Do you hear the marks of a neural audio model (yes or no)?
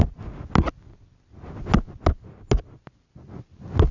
no